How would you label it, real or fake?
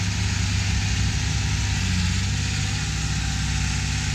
real